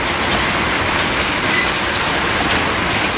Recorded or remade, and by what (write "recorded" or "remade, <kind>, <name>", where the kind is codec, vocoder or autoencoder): recorded